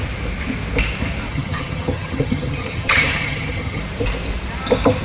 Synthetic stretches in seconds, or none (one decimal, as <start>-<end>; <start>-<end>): 1.3-3.8